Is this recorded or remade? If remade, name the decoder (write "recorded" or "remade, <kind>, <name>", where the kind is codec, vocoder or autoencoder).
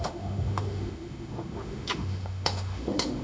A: remade, autoencoder, DAC-VAE